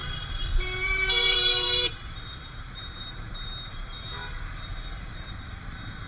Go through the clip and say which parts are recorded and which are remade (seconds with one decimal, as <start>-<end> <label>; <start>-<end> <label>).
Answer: 0.0-4.2 remade; 4.2-5.0 recorded; 5.0-6.1 remade